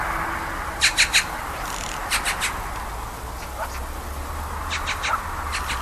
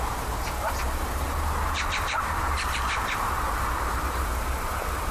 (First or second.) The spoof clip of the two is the second